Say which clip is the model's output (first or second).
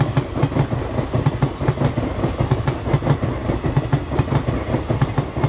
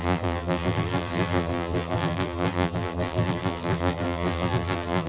second